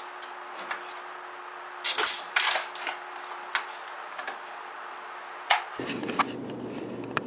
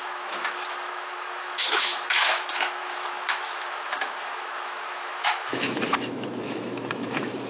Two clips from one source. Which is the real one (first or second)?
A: first